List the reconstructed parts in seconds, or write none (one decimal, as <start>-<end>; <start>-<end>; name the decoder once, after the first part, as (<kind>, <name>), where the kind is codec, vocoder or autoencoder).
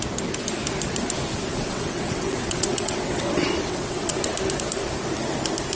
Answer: 1.5-4.1 (vocoder, WaveNeXt)